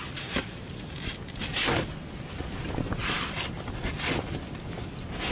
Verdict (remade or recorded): recorded